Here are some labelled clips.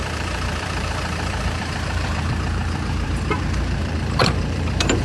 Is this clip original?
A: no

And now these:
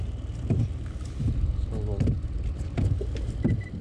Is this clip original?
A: yes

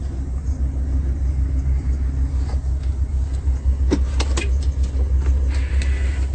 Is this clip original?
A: yes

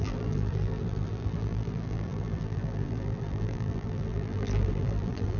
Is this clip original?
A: no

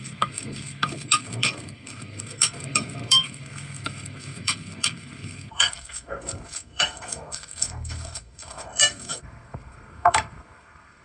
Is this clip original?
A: no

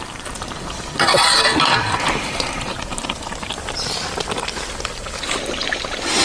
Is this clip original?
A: no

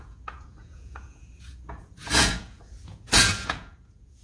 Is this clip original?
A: no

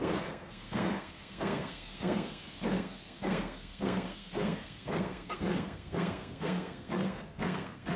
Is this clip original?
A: no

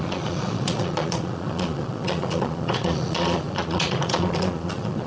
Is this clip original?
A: no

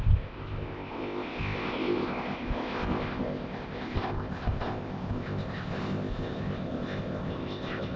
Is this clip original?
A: no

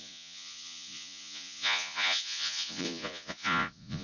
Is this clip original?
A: no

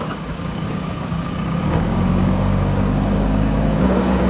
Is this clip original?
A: no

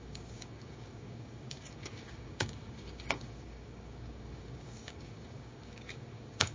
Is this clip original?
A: no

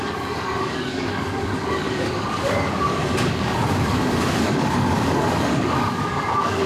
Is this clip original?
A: no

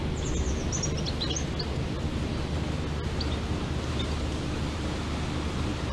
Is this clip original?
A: yes